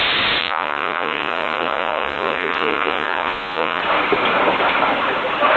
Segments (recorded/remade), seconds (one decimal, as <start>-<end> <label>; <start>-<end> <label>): 0.0-0.4 recorded; 0.4-3.8 remade; 3.8-5.6 recorded